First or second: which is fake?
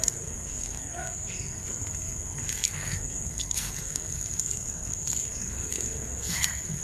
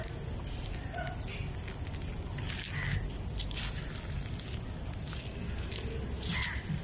first